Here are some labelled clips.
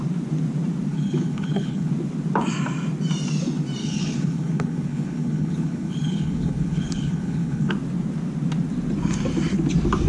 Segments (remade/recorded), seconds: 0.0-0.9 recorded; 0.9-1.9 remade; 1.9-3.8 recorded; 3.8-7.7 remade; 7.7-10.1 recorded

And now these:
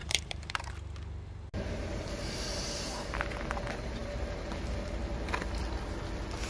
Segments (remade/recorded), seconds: 0.0-0.7 remade; 0.7-6.5 recorded

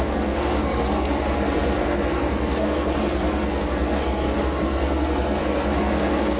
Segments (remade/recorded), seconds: 0.0-6.4 remade

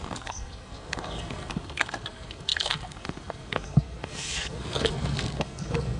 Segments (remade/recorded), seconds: 0.0-6.0 remade

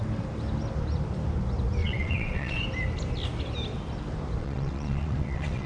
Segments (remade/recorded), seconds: 0.0-1.8 recorded; 1.8-2.6 remade; 2.6-4.4 recorded; 4.4-5.7 remade